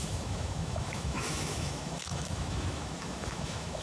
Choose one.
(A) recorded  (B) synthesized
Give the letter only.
B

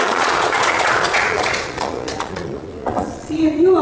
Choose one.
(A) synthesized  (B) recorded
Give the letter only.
A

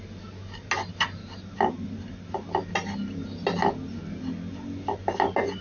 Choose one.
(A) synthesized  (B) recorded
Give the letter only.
B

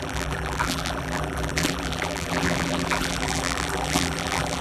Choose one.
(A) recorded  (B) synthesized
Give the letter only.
B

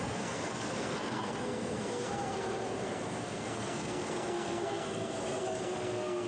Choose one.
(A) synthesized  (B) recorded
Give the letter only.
A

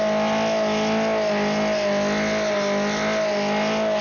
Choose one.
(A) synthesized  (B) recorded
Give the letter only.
B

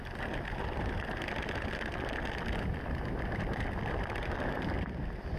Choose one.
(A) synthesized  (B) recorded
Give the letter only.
B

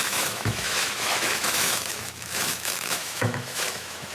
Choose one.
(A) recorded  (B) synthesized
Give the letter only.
B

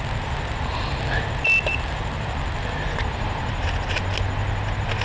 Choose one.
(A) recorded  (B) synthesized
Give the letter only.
A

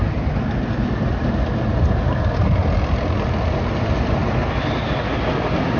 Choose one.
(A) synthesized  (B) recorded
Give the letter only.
B